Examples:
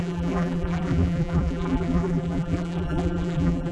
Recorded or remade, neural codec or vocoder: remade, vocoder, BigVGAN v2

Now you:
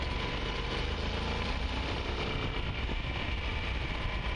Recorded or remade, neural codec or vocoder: recorded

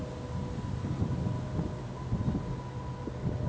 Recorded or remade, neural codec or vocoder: recorded